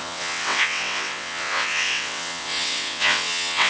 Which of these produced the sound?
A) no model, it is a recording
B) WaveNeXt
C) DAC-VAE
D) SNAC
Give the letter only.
B